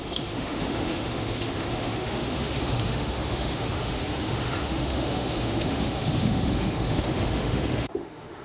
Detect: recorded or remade remade